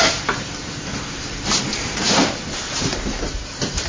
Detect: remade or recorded remade